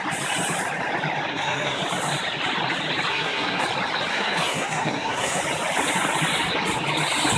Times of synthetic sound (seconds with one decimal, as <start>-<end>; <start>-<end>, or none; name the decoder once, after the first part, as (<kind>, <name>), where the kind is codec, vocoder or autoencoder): 1.3-1.8 (codec, SNAC); 3.1-3.6; 4.1-5.4